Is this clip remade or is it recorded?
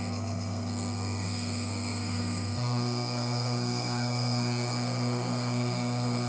remade